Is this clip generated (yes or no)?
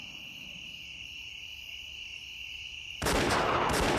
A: no